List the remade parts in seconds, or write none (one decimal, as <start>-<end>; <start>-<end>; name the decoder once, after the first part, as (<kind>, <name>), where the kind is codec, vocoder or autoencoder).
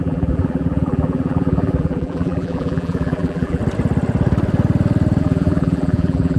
0.0-3.6 (vocoder, BigVGAN v2); 5.2-6.4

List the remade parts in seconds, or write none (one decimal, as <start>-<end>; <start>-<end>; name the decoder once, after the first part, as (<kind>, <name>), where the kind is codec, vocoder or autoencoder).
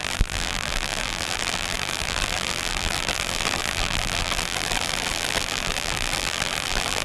0.0-7.0 (vocoder, BigVGAN v2)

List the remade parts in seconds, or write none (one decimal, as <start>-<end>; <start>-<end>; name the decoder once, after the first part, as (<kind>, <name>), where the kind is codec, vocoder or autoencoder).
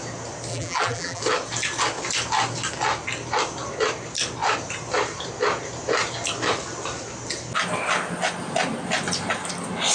0.5-1.2 (vocoder, BigVGAN v2)